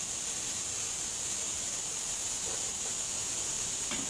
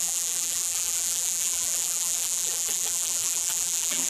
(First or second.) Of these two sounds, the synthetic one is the second